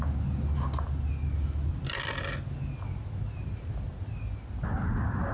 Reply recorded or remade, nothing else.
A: recorded